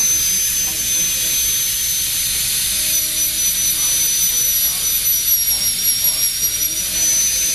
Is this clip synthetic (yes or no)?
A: no